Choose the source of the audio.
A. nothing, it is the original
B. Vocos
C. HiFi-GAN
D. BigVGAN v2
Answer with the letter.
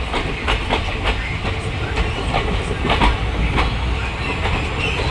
A